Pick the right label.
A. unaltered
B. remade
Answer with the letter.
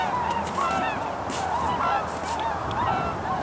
B